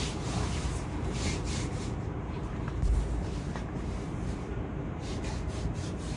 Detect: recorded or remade remade